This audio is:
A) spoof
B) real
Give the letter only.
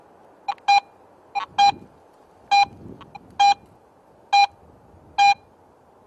B